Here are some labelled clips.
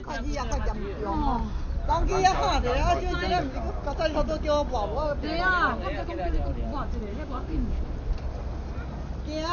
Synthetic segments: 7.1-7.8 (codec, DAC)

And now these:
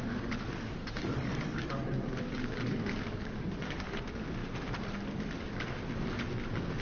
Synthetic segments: 0.8-4.0 (codec, DAC)

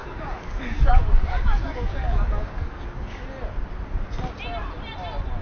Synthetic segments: 0.0-3.2 (codec, DAC)

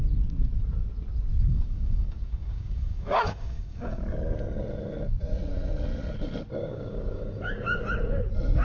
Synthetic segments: 1.5-4.0 (codec, DAC); 6.6-7.8

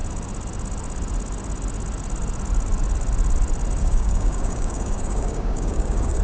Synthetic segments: 3.8-6.2 (codec, DAC)

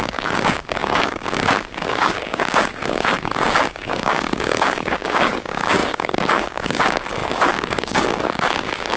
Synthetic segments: 0.0-9.0 (codec, DAC)

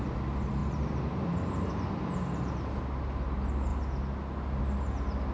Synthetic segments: none

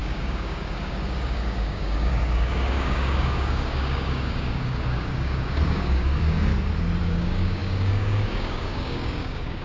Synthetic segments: 0.0-6.5 (codec, DAC); 7.0-9.6